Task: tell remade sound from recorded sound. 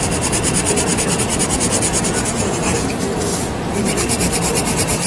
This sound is remade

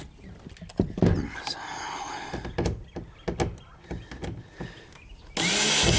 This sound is recorded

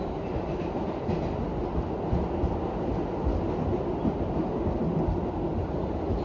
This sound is recorded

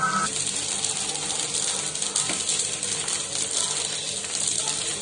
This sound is recorded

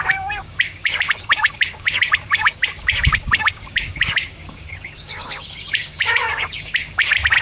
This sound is remade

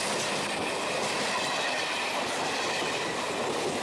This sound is recorded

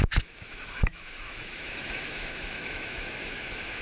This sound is remade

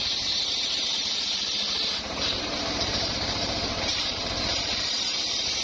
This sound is remade